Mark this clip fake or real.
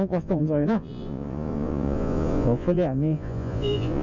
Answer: fake